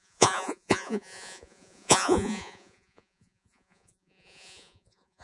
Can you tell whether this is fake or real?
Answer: fake